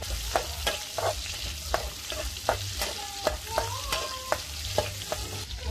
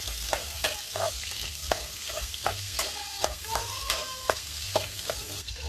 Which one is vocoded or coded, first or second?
second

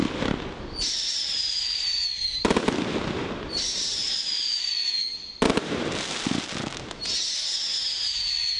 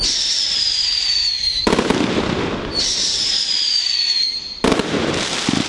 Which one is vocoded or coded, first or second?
second